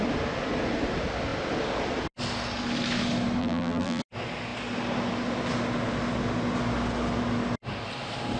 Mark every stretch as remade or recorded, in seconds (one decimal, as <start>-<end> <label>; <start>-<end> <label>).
0.0-3.4 recorded; 3.4-4.0 remade; 4.0-8.4 recorded